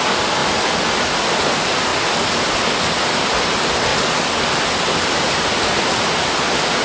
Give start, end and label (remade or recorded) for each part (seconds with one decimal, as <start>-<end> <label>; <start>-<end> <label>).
0.0-6.8 recorded